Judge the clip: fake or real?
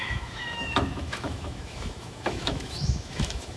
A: fake